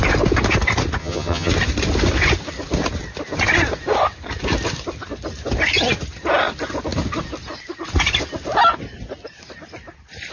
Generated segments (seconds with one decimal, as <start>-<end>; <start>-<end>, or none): 1.0-1.5